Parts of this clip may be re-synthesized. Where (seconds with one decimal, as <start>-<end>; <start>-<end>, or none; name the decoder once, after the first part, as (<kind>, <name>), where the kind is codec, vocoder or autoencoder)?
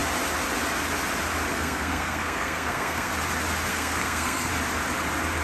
1.5-3.1 (codec, SNAC); 3.7-4.5